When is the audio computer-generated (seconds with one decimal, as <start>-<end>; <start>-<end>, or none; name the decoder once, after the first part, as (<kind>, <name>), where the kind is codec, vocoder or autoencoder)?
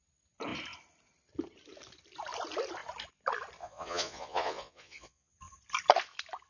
3.6-5.3 (vocoder, Vocos)